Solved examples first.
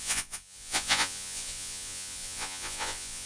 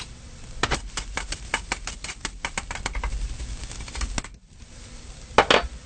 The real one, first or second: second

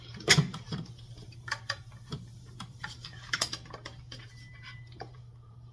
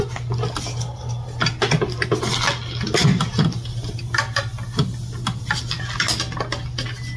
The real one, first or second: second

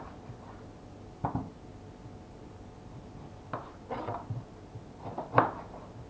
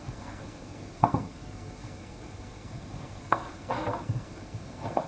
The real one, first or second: first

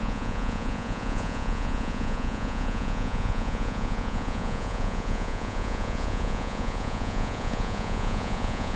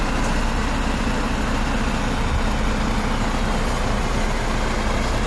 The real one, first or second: second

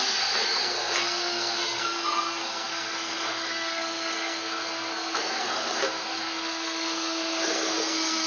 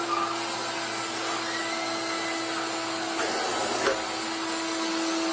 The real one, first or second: second